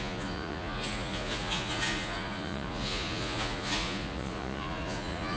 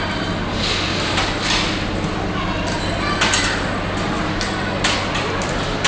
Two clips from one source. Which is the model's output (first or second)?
first